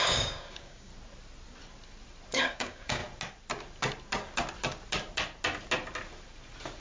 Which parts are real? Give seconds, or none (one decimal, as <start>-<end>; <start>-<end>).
0.9-2.4; 3.0-6.8